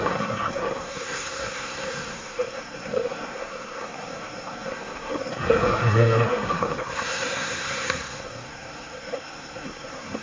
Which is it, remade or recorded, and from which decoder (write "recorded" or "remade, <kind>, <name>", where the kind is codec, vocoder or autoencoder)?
remade, codec, SNAC